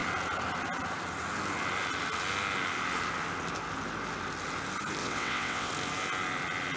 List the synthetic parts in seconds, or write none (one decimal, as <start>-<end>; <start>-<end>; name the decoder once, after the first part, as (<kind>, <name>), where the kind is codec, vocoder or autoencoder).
5.0-5.7 (vocoder, WaveNeXt)